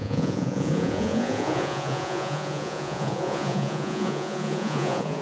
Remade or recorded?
remade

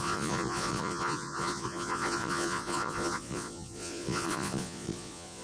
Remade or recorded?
remade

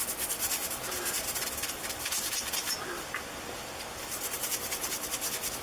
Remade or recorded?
recorded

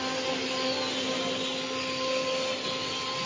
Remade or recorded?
recorded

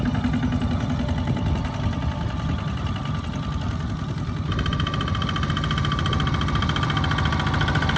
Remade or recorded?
recorded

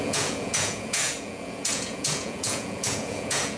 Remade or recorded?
remade